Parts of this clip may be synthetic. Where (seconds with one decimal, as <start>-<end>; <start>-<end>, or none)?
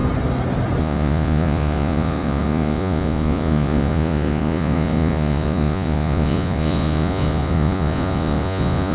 0.8-8.9